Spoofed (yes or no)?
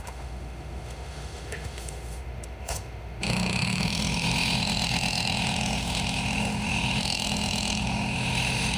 yes